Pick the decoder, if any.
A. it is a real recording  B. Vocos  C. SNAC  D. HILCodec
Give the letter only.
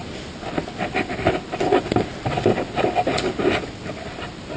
A